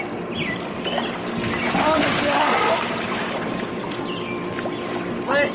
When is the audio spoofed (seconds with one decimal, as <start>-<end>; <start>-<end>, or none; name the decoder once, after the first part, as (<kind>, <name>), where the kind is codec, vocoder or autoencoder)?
1.2-4.1 (vocoder, BigVGAN v2)